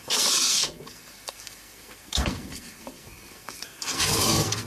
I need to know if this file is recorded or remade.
remade